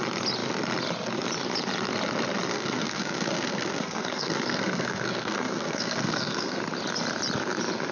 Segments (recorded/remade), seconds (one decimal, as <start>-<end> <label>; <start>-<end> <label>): 0.0-2.5 recorded; 2.5-6.6 remade; 6.6-7.9 recorded